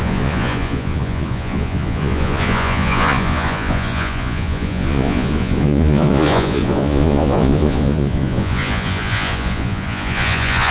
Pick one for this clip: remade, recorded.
remade